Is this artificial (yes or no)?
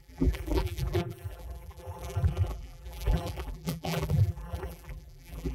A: yes